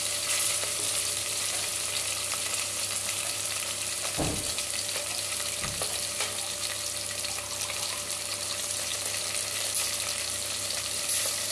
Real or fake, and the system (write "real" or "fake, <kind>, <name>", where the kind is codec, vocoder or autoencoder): fake, vocoder, BigVGAN v2